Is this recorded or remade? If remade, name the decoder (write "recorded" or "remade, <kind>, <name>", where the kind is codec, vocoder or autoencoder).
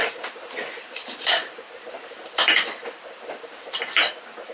remade, vocoder, BigVGAN v2